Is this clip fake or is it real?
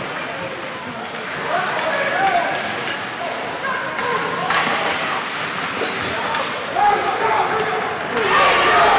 real